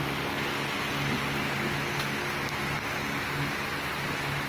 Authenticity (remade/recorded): recorded